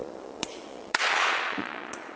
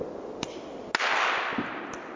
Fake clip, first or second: first